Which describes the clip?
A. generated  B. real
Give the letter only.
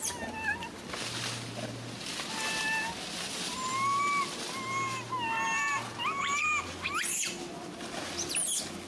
B